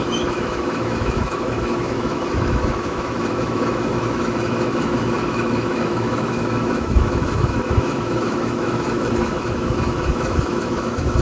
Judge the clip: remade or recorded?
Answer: remade